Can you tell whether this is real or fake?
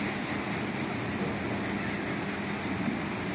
real